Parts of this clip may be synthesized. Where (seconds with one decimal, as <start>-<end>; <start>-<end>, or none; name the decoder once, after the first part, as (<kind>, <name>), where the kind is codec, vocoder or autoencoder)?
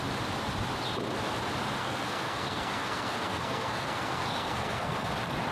1.8-5.1 (codec, SNAC)